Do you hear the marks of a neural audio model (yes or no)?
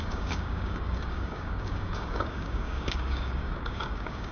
yes